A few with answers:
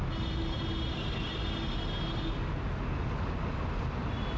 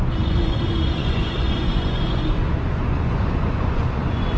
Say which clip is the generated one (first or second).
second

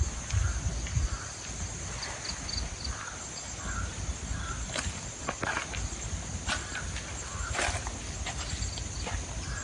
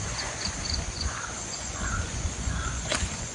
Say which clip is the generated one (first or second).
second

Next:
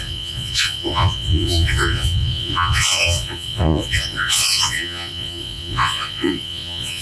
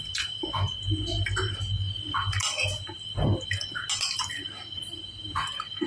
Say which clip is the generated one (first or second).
first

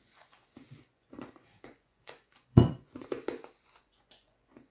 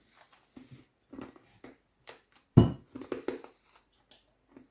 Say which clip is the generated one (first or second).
first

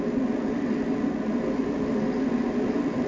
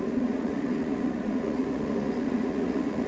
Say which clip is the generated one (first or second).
second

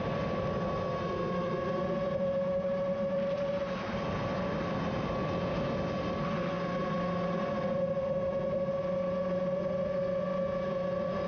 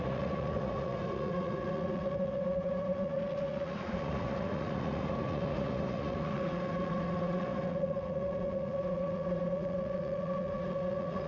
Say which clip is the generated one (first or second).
second